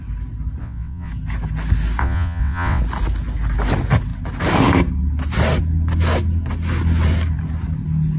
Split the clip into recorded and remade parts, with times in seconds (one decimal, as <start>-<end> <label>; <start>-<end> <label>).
0.0-0.6 recorded; 0.6-1.1 remade; 1.1-2.0 recorded; 2.0-2.8 remade; 2.8-8.2 recorded